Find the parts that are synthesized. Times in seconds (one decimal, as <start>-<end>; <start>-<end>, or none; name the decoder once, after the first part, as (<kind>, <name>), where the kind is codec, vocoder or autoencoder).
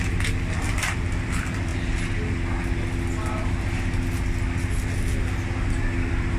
0.0-1.7 (vocoder, BigVGAN v2); 5.5-6.4